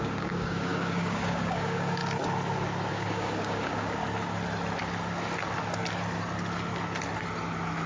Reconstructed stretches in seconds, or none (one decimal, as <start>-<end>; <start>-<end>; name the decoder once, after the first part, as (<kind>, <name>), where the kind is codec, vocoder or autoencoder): 0.0-2.0 (codec, DAC); 2.9-4.0